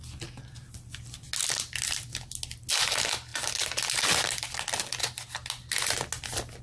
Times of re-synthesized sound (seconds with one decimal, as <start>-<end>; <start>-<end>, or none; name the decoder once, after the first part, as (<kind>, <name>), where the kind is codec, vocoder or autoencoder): none